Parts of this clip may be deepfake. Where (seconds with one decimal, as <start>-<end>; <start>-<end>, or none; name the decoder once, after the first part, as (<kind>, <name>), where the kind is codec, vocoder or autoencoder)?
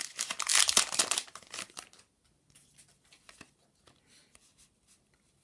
none